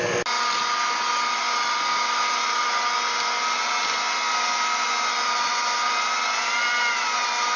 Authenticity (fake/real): real